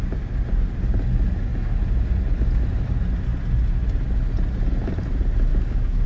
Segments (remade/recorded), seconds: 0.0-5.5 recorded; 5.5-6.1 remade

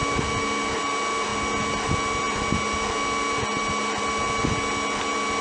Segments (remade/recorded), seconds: 0.0-5.4 recorded

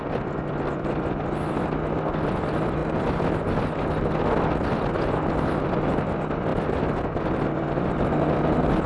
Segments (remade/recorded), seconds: 0.0-8.9 recorded

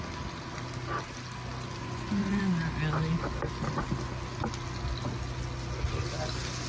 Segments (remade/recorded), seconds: 0.0-1.8 recorded; 1.8-2.4 remade; 2.4-6.7 recorded

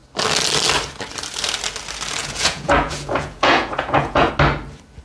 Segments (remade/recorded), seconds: 0.0-2.2 recorded; 2.2-4.3 remade; 4.3-5.0 recorded

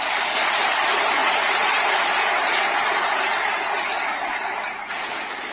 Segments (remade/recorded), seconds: 0.0-1.2 recorded; 1.2-1.7 remade; 1.7-5.5 recorded